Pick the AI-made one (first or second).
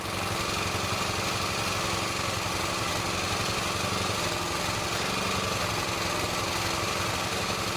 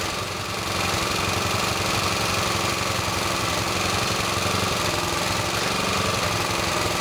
second